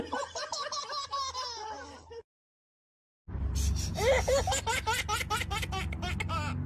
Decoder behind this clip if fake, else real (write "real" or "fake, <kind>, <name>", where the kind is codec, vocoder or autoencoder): real